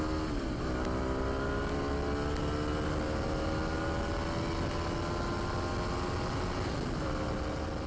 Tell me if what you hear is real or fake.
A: real